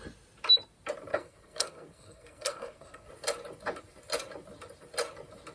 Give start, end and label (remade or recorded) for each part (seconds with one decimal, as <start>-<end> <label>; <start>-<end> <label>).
0.0-1.1 recorded; 1.1-3.1 remade; 3.1-5.5 recorded